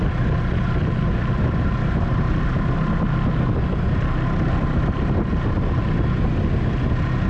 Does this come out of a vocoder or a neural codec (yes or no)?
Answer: no